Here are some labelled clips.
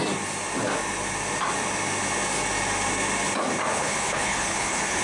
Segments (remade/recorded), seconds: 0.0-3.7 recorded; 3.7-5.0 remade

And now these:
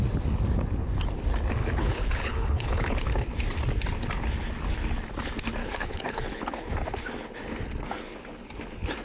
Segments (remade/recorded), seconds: 0.0-1.6 recorded; 1.6-3.1 remade; 3.1-5.6 recorded; 5.6-6.7 remade; 6.7-9.0 recorded

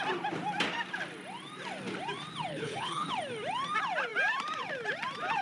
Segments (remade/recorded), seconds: 0.0-2.5 recorded; 2.5-3.1 remade; 3.1-5.4 recorded

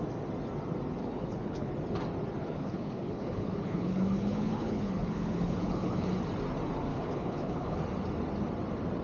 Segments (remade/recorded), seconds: 0.0-1.0 recorded; 1.0-1.7 remade; 1.7-2.4 recorded; 2.4-6.1 remade; 6.1-6.9 recorded; 6.9-7.8 remade; 7.8-9.0 recorded

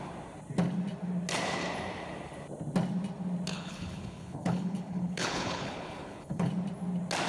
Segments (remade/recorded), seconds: 0.0-3.5 recorded; 3.5-6.5 remade; 6.5-7.3 recorded